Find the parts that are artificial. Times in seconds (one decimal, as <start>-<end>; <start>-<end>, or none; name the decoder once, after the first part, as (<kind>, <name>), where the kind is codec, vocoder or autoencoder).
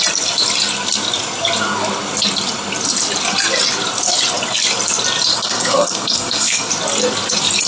5.3-6.7 (codec, SNAC)